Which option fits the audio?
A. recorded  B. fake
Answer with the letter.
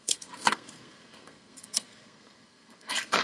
B